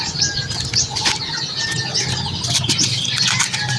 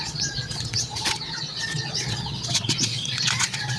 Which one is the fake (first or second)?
second